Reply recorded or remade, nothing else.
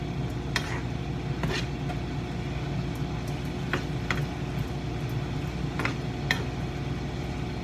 recorded